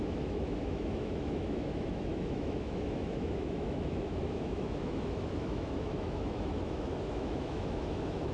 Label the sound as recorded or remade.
remade